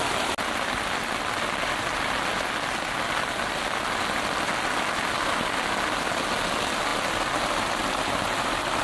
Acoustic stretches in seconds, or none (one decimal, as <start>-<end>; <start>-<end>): 0.0-8.8